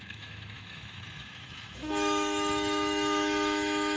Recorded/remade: remade